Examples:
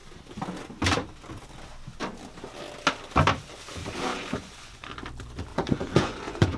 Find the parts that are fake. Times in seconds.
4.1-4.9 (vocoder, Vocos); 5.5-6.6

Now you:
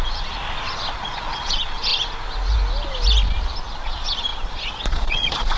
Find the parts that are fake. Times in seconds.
0.0-0.4 (vocoder, Vocos); 0.9-1.9; 3.8-5.6

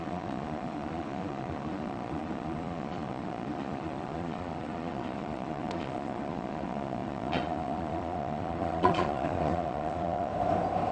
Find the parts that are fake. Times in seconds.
0.0-10.3 (vocoder, Vocos)

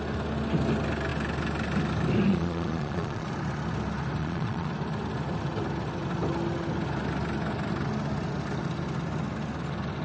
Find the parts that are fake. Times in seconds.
2.3-3.3 (vocoder, Vocos); 4.2-4.7

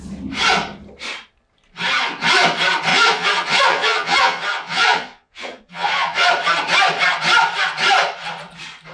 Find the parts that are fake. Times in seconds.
2.9-6.3 (vocoder, Vocos)

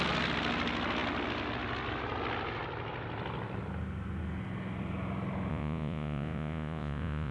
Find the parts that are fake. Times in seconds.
5.5-7.3 (vocoder, Vocos)